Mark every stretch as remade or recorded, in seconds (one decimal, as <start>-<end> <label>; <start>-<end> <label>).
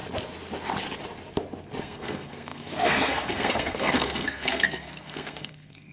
0.0-1.8 recorded; 1.8-5.9 remade